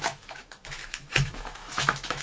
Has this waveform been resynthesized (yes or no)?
yes